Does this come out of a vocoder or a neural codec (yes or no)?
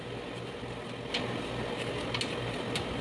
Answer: no